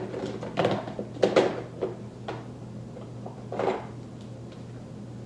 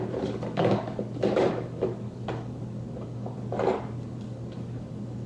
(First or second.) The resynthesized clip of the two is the second